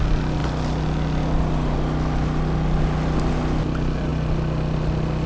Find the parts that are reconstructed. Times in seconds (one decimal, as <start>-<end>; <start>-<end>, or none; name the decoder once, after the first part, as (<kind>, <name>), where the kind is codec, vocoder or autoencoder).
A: none